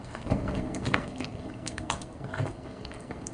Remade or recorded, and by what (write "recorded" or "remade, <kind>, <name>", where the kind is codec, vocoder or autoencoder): remade, codec, SNAC